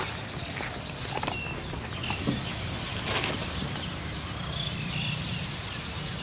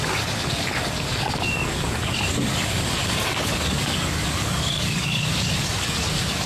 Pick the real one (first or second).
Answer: first